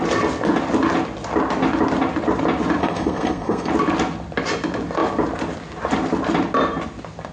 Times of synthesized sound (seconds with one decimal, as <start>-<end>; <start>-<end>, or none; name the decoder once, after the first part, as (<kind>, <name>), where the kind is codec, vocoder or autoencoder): 2.8-3.7 (codec, SNAC)